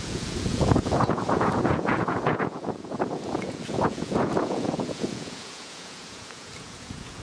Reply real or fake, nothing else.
fake